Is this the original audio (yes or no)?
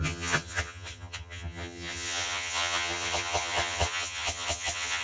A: no